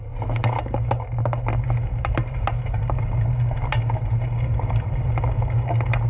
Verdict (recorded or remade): recorded